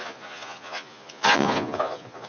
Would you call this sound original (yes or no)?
no